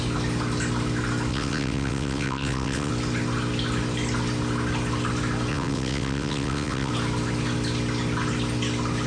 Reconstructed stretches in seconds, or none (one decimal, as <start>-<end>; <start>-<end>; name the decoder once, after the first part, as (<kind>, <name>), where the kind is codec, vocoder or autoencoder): 1.3-2.9 (vocoder, WaveNeXt); 5.5-6.9